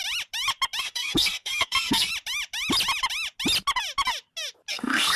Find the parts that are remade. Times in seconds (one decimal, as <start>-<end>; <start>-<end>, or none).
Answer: 0.8-2.1; 4.7-5.2